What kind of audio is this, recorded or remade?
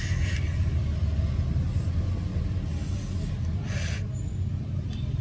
recorded